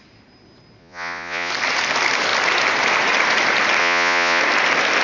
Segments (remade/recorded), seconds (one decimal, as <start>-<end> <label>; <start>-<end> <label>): 0.0-0.8 recorded; 0.8-1.5 remade; 1.5-3.8 recorded; 3.8-4.4 remade; 4.4-5.0 recorded